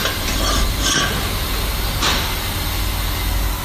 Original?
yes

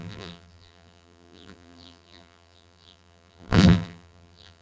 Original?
no